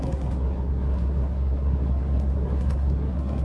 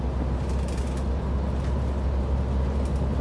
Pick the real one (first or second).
second